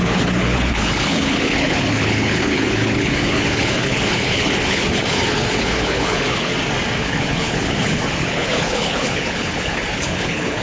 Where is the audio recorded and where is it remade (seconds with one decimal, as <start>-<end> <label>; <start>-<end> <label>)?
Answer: 0.0-6.5 remade; 6.5-7.0 recorded; 7.0-10.6 remade